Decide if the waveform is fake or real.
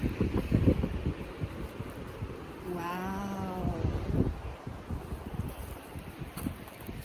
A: real